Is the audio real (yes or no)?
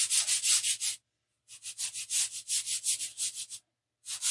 yes